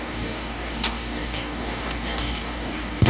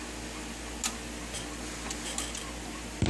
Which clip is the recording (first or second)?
second